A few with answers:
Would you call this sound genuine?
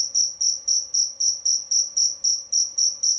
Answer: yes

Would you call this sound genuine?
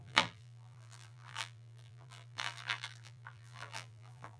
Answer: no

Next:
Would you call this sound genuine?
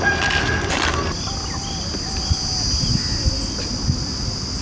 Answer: yes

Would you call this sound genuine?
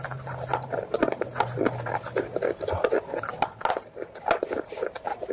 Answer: yes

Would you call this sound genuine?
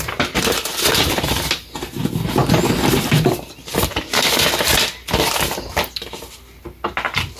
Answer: yes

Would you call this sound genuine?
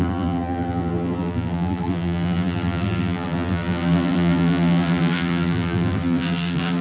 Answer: no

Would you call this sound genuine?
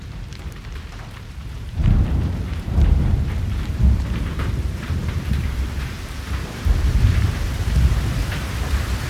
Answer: no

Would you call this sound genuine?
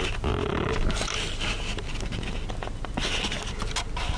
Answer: yes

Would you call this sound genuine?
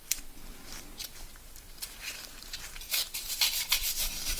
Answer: no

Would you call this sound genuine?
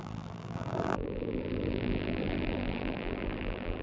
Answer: no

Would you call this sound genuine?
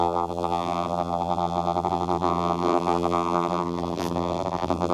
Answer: no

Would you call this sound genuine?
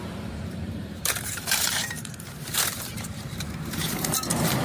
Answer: no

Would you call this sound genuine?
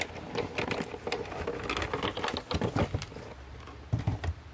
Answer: yes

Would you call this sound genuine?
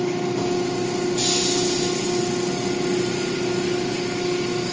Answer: yes